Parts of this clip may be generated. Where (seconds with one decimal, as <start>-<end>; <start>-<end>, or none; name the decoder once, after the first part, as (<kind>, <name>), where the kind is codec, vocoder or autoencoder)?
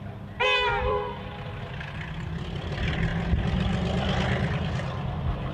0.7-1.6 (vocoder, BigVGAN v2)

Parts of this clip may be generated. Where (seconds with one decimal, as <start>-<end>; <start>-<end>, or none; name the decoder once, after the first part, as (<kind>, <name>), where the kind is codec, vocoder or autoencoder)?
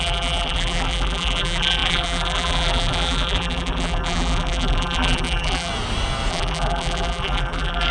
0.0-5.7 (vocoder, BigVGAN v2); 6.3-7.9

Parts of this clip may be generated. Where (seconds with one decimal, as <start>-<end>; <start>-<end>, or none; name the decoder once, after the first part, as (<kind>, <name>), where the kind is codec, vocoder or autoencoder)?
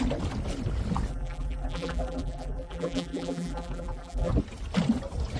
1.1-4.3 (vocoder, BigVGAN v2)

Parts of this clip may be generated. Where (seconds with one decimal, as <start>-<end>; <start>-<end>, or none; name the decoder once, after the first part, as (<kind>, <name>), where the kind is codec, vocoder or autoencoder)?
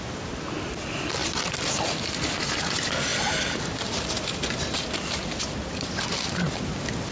1.2-2.0 (vocoder, BigVGAN v2); 3.1-6.4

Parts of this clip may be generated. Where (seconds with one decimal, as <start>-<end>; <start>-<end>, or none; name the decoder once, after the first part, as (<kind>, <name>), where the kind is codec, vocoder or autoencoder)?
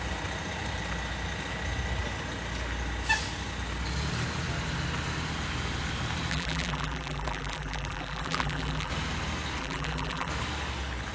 6.3-8.9 (vocoder, BigVGAN v2); 9.6-10.3